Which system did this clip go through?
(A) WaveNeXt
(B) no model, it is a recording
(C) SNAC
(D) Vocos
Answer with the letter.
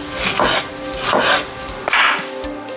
B